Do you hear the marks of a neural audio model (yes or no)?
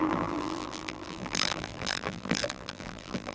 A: yes